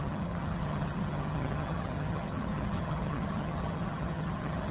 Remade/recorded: remade